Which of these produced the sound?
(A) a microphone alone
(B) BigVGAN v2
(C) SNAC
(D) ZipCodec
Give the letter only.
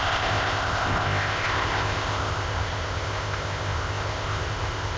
D